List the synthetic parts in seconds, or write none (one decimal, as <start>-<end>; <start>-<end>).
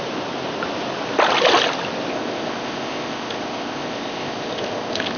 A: 2.1-5.2